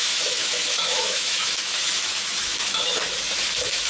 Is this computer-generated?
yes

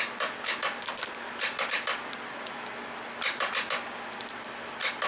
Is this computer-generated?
no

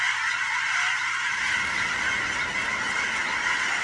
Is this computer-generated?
no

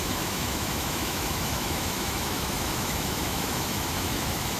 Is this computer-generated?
yes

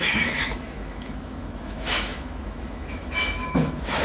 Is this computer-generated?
yes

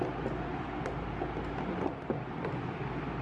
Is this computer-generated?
no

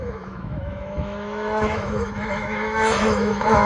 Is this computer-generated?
yes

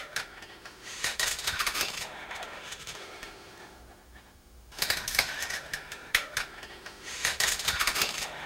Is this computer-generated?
yes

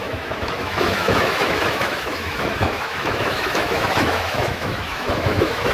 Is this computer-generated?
yes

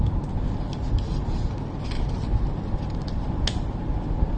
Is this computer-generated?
no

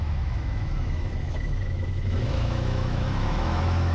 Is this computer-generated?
yes